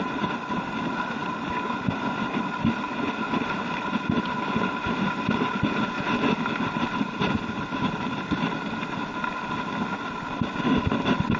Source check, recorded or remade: recorded